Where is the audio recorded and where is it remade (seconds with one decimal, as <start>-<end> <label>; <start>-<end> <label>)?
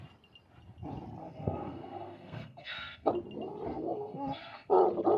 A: 0.0-1.2 recorded; 1.2-3.1 remade; 3.1-3.7 recorded; 3.7-4.7 remade; 4.7-5.2 recorded